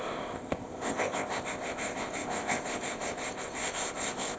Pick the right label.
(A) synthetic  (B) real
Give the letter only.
A